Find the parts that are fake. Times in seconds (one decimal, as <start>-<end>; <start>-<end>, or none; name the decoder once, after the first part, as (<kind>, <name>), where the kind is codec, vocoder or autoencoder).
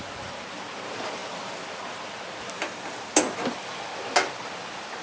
none